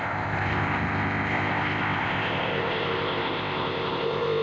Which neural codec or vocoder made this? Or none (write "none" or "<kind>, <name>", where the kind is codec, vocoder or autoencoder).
codec, ZipCodec